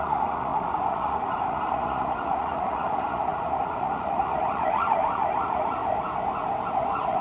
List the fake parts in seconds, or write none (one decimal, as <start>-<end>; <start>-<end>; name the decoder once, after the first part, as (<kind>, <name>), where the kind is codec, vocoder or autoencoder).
0.0-5.8 (vocoder, Vocos); 6.7-7.2